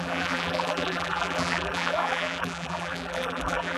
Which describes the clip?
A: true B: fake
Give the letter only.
B